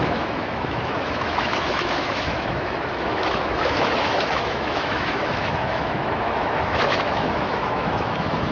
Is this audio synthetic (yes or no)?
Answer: yes